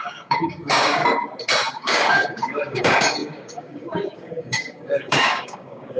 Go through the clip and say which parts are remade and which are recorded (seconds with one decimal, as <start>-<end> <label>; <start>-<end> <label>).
0.0-1.0 remade; 1.0-1.7 recorded; 1.7-6.0 remade